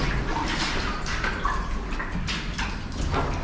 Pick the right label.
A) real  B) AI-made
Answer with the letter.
A